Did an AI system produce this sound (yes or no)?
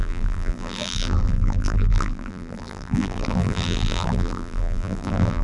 yes